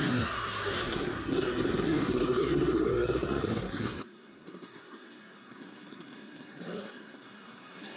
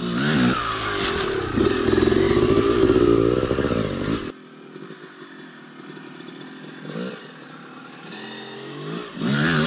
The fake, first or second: first